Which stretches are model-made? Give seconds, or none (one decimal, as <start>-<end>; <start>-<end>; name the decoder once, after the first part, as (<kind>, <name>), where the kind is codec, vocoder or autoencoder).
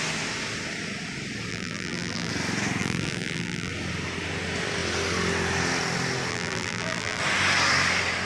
1.5-2.3 (vocoder, BigVGAN v2); 2.8-3.7; 6.3-7.2